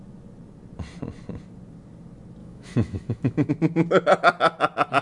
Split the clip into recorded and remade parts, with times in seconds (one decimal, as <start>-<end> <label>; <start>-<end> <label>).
0.0-2.4 recorded; 2.4-3.5 remade; 3.5-5.0 recorded